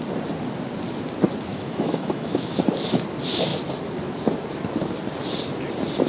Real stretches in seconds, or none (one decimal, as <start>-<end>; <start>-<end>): 0.0-1.5; 2.6-6.1